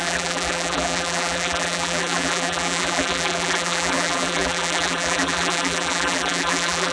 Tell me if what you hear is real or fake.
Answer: fake